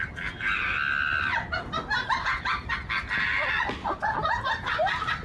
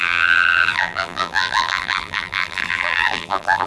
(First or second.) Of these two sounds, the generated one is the second